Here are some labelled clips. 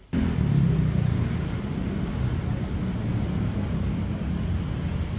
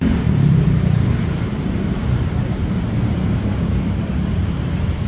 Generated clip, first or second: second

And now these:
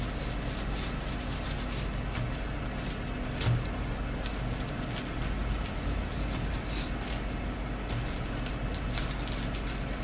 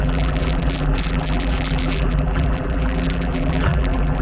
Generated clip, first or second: second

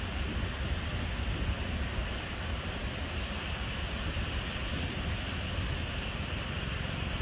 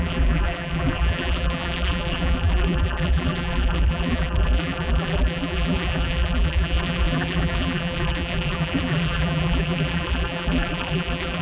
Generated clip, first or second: second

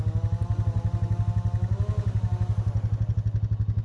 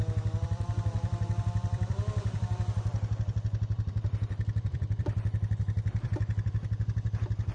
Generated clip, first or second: second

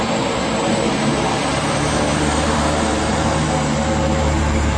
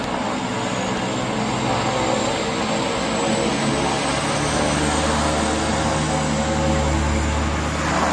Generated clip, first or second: first